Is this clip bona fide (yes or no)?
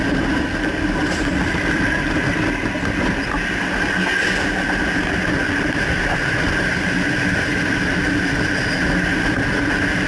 yes